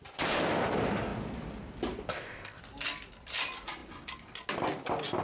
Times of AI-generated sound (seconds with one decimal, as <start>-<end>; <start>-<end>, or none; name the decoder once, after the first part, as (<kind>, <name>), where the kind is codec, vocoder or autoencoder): 2.1-2.6 (codec, ZipCodec)